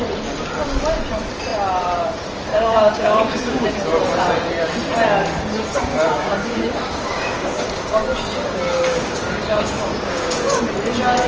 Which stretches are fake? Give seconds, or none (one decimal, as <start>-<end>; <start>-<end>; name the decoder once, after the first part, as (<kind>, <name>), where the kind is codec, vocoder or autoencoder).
2.5-3.7 (codec, DAC); 5.9-10.6